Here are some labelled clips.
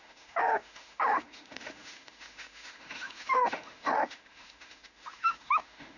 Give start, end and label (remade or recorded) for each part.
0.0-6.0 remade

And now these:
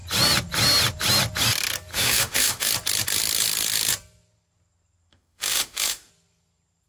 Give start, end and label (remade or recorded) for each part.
0.0-1.9 recorded; 1.9-2.7 remade; 2.7-5.1 recorded; 5.1-6.1 remade; 6.1-6.9 recorded